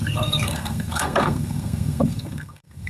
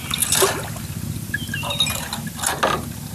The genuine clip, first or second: second